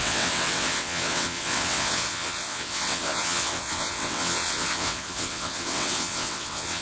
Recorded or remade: remade